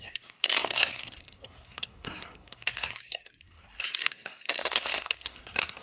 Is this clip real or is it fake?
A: fake